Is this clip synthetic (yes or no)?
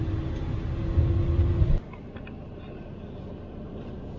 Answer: no